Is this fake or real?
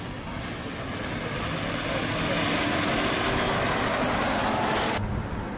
real